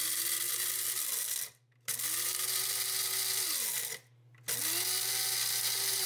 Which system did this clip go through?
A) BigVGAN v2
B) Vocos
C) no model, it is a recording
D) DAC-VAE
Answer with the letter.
C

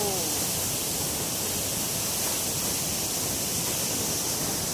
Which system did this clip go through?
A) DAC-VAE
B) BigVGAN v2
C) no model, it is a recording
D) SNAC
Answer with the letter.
C